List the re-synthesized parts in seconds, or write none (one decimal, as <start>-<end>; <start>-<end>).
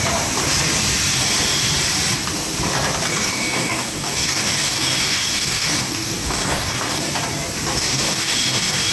3.1-7.0; 7.8-8.9